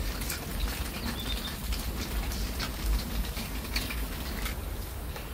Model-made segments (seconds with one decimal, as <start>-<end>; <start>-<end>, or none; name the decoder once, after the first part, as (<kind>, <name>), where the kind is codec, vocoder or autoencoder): 2.7-5.3 (codec, DAC)